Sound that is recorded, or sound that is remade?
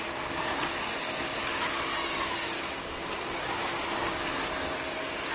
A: recorded